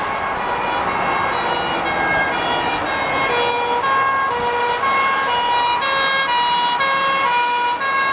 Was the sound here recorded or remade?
recorded